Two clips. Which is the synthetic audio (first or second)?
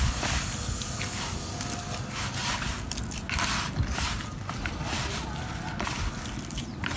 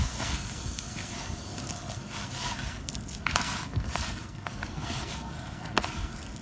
second